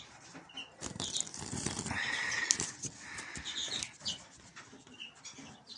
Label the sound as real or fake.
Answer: fake